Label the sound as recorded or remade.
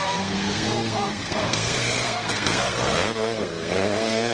remade